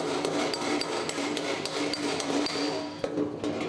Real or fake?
real